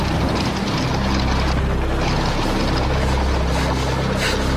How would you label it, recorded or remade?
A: recorded